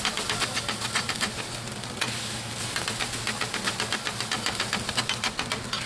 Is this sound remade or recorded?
recorded